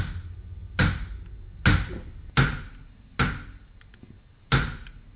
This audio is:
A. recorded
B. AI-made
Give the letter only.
A